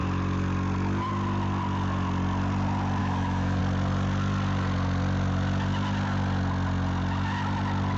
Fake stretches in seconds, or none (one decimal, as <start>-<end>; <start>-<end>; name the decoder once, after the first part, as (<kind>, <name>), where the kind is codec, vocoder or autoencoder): 3.0-3.6 (autoencoder, DAC-VAE)